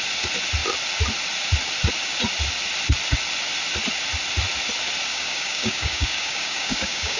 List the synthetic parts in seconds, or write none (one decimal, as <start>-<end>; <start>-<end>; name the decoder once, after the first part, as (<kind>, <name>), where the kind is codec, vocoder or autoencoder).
5.1-7.2 (codec, DAC)